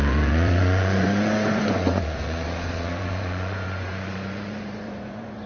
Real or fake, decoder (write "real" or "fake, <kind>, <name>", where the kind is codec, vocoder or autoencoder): fake, vocoder, Vocos